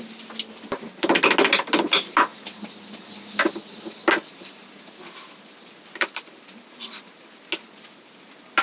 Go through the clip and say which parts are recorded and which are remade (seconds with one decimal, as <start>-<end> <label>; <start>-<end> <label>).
0.0-8.6 recorded